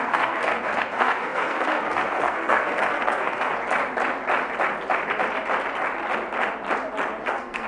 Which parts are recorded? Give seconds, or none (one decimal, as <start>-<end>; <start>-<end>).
3.5-7.3

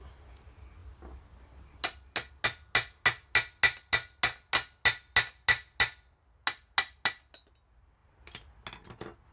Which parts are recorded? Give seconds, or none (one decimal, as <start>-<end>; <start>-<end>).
0.0-9.3